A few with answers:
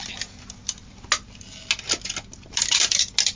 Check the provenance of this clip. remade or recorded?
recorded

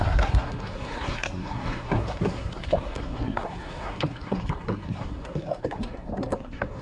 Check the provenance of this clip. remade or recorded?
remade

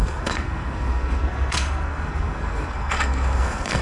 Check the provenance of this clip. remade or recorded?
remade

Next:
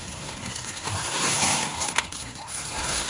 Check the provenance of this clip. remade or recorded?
remade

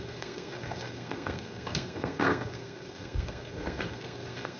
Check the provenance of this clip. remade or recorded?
remade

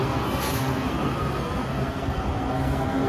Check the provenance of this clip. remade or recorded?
remade